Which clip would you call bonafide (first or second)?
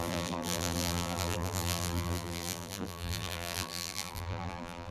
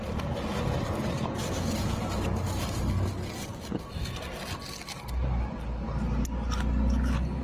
second